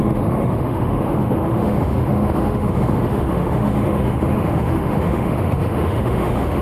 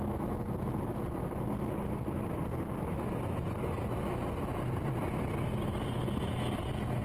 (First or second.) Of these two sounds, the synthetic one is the first